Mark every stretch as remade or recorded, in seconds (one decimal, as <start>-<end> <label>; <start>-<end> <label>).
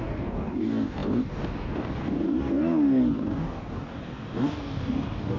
0.0-5.4 remade